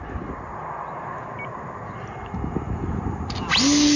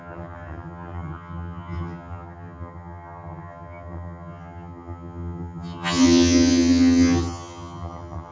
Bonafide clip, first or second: first